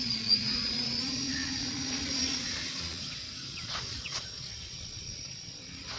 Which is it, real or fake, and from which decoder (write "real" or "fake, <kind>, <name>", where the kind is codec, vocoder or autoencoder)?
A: fake, vocoder, Vocos